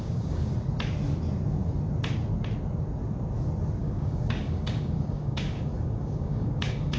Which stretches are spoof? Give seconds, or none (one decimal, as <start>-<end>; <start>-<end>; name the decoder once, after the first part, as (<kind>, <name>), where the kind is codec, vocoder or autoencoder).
0.0-0.5 (codec, DAC); 3.8-7.0